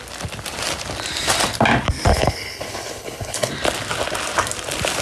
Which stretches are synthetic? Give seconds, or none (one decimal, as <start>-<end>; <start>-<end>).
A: 2.1-3.5